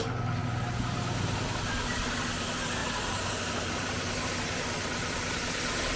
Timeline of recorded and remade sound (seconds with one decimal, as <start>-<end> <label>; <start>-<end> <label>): 0.0-2.8 recorded; 2.8-3.8 remade; 3.8-6.0 recorded